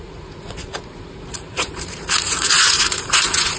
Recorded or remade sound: remade